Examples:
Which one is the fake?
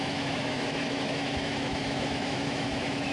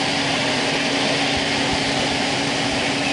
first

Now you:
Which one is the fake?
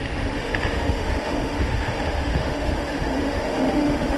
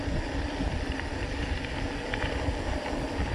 first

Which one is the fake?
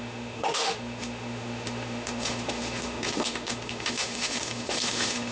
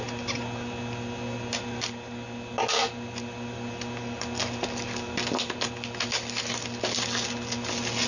first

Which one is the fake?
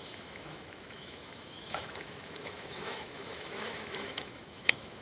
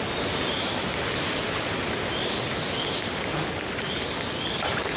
first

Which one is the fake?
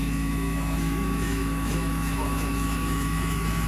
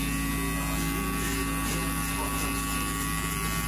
first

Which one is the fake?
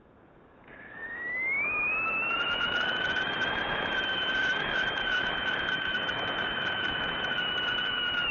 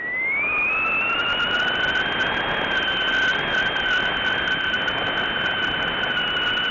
first